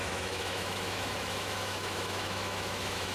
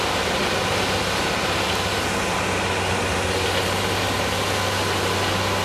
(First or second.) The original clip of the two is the second